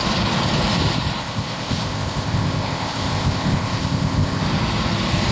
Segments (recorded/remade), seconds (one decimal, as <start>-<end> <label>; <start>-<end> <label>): 0.0-1.2 recorded; 1.2-4.4 remade; 4.4-5.3 recorded